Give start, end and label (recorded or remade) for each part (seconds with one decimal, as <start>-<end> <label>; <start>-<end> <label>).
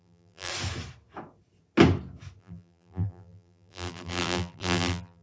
0.0-0.5 remade; 0.5-2.4 recorded; 2.4-5.2 remade